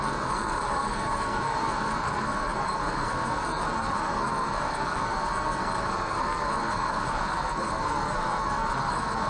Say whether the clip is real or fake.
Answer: fake